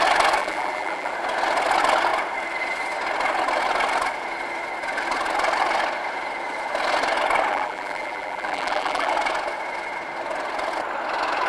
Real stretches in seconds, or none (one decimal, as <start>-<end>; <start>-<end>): 0.0-0.4; 1.1-7.5; 9.1-11.5